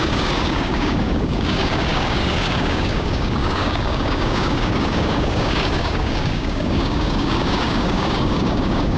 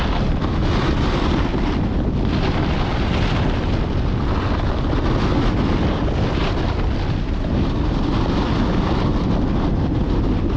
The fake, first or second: first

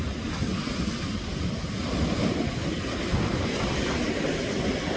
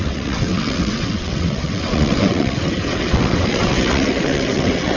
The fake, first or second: second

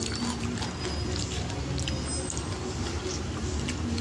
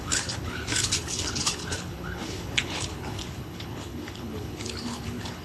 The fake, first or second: second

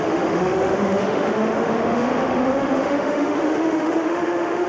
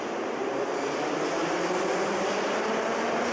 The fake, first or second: first